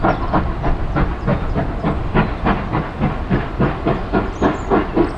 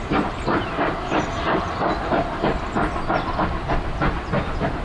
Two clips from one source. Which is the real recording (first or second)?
first